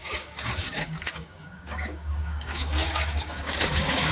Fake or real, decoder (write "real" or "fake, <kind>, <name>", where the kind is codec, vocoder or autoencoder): fake, codec, DAC